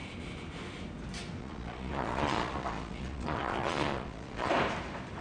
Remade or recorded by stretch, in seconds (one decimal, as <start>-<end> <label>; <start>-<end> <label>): 0.0-1.4 recorded; 1.4-4.5 remade; 4.5-5.2 recorded